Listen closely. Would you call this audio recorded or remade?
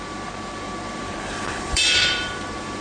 remade